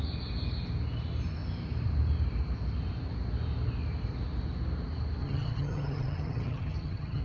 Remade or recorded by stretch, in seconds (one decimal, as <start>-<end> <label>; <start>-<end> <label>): 0.0-5.2 recorded; 5.2-7.2 remade